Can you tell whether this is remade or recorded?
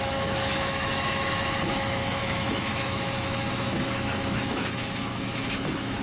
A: remade